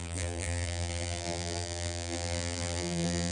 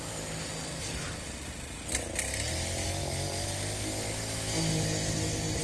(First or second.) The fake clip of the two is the first